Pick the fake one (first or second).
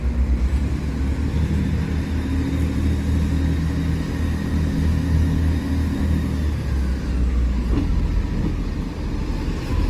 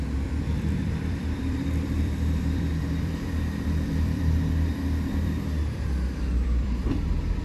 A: second